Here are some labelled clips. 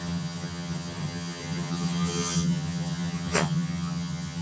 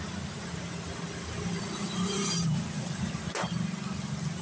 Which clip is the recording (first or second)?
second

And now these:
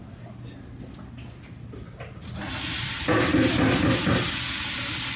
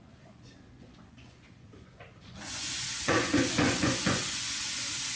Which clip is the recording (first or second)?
first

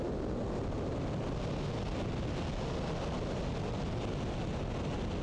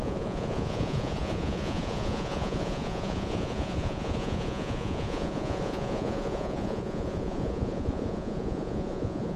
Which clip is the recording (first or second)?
first